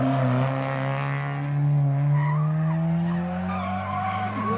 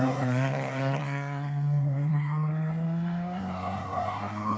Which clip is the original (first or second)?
first